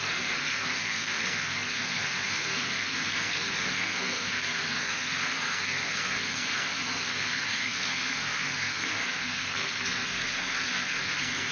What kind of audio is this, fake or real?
fake